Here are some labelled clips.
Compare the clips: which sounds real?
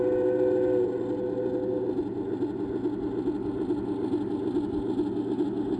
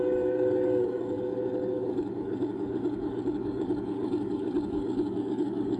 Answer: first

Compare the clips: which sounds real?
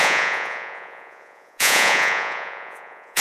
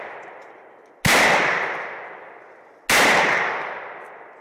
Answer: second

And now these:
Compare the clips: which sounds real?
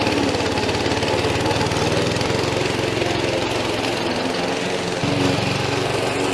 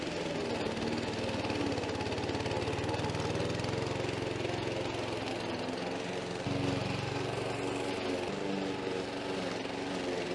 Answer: second